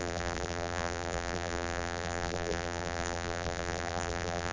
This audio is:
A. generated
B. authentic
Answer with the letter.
A